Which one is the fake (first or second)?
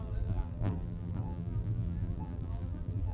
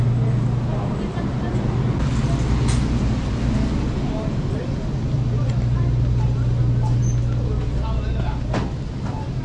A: first